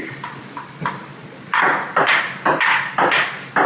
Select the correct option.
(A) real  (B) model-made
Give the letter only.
A